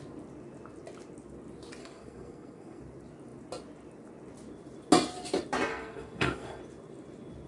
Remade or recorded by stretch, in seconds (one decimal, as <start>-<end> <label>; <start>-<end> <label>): 0.0-1.8 recorded; 1.8-2.8 remade; 2.8-5.7 recorded; 5.7-6.6 remade; 6.6-7.5 recorded